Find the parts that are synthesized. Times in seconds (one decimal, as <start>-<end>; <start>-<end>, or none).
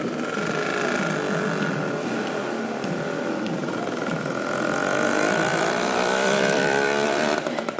5.5-7.8